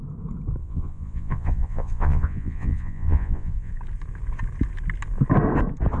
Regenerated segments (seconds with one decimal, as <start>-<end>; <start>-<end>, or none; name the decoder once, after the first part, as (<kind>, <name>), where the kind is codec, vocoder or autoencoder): 0.6-3.7 (vocoder, Vocos)